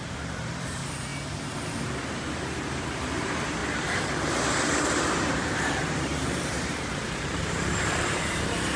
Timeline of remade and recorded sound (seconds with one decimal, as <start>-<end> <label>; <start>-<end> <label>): 0.0-1.1 remade; 1.1-2.0 recorded; 2.0-8.8 remade